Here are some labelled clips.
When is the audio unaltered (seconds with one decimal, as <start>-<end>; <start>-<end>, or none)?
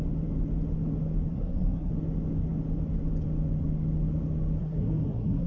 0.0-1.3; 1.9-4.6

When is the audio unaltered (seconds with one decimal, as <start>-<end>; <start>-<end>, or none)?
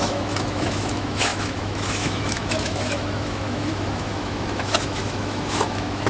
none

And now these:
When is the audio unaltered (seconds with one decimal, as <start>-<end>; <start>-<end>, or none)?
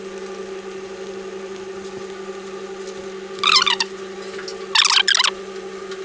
0.0-6.0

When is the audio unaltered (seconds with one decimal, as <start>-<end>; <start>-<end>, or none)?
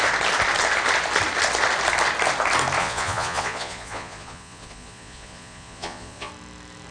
0.0-2.8; 6.3-6.9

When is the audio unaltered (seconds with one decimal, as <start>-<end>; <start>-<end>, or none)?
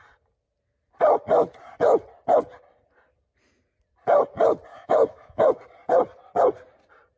0.0-4.7; 5.5-7.2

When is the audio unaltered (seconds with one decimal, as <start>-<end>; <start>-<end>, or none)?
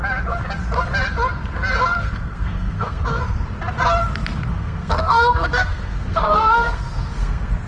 0.0-2.0; 3.2-4.5